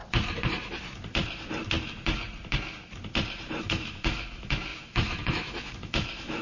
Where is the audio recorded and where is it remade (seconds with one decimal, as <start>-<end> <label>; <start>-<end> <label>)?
0.0-3.6 recorded; 3.6-6.4 remade